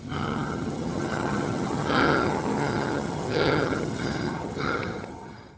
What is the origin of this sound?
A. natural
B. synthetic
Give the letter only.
B